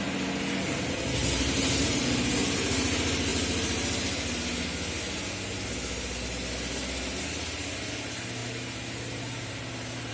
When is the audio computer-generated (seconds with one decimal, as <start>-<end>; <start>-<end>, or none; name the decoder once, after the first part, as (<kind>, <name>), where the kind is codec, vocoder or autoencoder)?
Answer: 1.2-2.3 (vocoder, BigVGAN v2); 8.4-10.1